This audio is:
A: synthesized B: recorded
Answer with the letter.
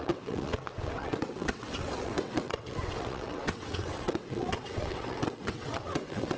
A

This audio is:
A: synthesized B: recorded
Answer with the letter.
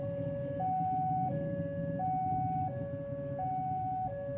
B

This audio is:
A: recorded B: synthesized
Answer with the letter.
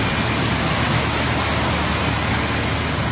A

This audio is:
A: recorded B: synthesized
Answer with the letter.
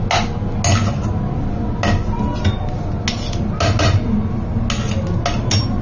A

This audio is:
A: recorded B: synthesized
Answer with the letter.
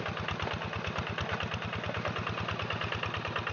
A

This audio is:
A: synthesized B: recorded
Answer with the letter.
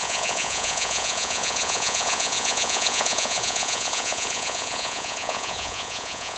A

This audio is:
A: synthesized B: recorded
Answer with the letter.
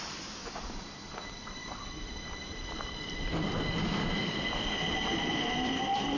A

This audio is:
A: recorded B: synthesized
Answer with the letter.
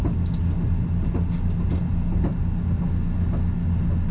A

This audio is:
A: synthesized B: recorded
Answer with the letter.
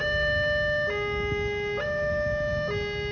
B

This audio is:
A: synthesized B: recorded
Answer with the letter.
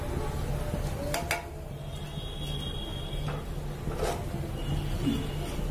B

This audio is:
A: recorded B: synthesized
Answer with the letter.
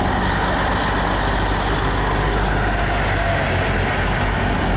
A